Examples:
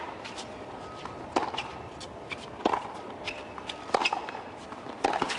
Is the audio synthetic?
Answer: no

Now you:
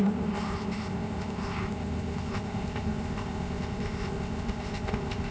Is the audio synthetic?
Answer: yes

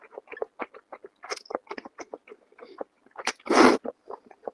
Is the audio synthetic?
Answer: no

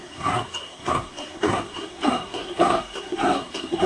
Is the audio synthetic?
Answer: yes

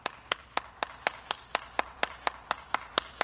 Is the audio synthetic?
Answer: yes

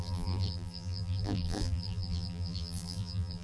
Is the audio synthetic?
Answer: yes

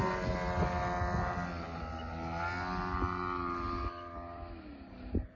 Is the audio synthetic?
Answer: no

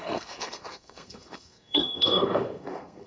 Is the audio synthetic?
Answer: yes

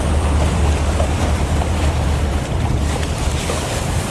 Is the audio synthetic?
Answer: yes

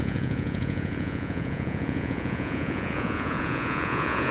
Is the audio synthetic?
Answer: yes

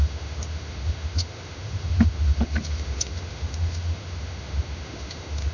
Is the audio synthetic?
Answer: yes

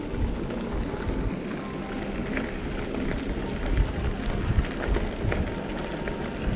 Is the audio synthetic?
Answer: no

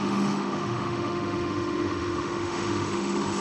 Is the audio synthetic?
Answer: yes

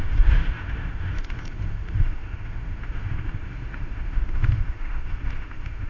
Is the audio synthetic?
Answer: yes